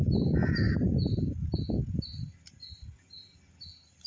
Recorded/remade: recorded